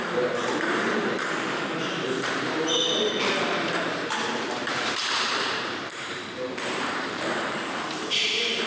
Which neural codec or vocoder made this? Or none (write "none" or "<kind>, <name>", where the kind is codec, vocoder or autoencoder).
vocoder, BigVGAN v2